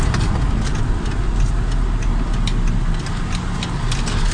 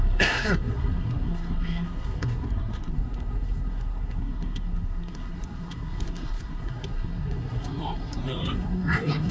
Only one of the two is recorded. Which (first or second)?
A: first